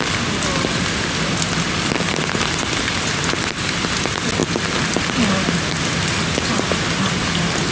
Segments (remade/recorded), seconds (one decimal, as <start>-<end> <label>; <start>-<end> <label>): 0.0-7.7 recorded